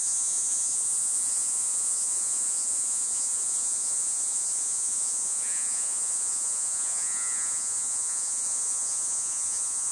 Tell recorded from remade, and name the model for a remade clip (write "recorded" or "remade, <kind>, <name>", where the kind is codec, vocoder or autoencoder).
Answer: remade, vocoder, Vocos